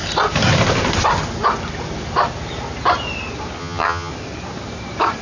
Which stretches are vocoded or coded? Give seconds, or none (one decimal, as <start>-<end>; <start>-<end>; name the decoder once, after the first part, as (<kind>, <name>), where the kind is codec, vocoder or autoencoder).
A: 3.6-4.1 (vocoder, HiFi-GAN)